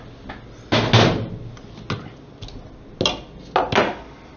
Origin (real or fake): real